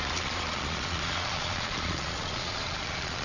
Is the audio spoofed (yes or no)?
yes